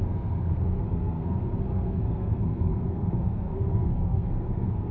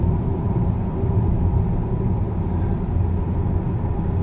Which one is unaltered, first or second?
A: second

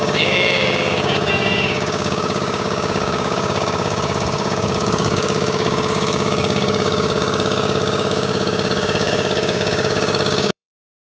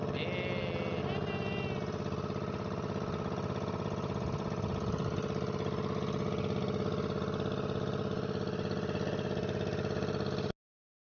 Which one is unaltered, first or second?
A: second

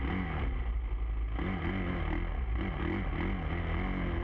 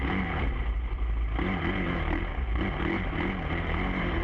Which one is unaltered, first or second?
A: first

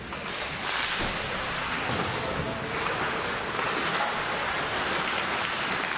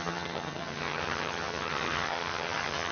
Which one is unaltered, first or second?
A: first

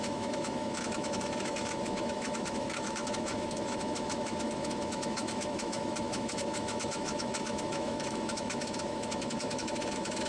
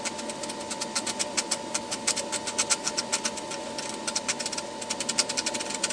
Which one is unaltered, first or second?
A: second